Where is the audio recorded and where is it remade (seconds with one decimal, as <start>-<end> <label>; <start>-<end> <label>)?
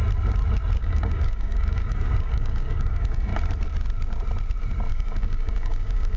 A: 0.0-0.8 recorded; 0.8-3.3 remade; 3.3-4.9 recorded; 4.9-6.2 remade